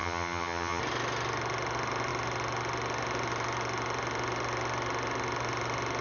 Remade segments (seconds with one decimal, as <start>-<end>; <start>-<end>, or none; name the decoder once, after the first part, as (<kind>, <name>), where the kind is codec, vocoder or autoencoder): 0.0-0.8 (vocoder, HiFi-GAN)